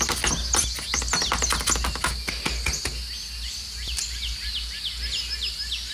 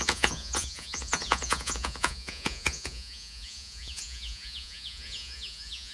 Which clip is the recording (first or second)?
first